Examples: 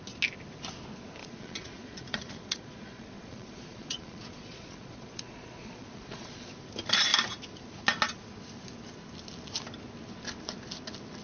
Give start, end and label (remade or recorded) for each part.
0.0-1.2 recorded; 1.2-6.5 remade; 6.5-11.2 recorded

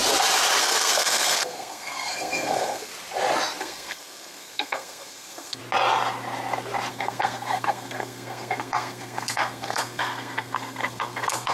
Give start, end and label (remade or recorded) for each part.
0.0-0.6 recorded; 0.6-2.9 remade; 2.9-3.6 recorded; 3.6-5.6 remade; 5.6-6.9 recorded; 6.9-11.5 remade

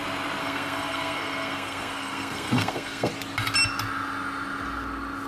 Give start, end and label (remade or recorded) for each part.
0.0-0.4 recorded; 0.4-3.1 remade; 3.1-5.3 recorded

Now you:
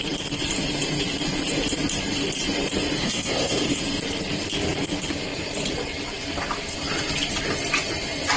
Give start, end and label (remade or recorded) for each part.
0.0-3.0 recorded; 3.0-3.8 remade; 3.8-8.4 recorded

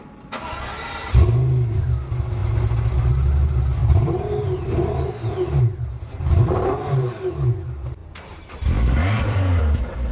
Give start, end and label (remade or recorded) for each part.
0.0-3.8 recorded; 3.8-7.3 remade; 7.3-8.0 recorded; 8.0-9.6 remade; 9.6-10.1 recorded

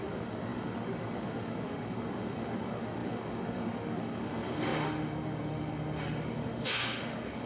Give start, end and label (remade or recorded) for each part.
0.0-7.5 remade

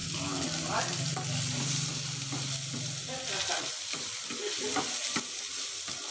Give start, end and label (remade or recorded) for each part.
0.0-6.1 recorded